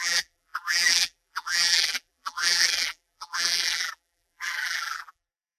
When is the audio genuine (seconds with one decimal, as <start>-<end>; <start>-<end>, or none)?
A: none

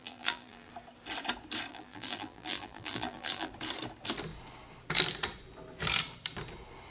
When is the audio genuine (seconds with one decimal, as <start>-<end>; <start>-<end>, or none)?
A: 0.7-1.7; 3.5-6.9

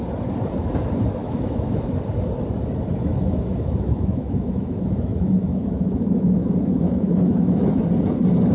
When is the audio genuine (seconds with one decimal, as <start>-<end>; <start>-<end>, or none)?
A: 0.0-1.2; 1.8-3.1; 7.8-8.5

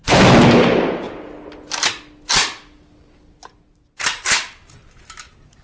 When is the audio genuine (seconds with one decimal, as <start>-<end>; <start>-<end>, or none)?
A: 0.0-5.6

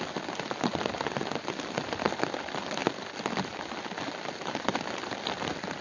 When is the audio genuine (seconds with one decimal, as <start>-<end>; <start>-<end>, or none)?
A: 0.0-5.8

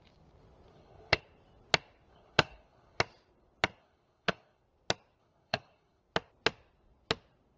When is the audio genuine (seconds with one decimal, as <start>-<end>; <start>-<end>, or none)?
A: 0.0-0.7; 1.2-2.1; 3.0-3.8; 4.6-5.2; 6.0-7.6